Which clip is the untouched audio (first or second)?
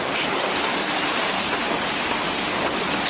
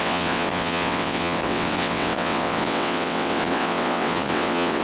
first